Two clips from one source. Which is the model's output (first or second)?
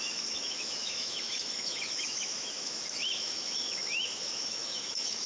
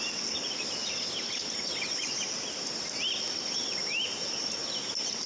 first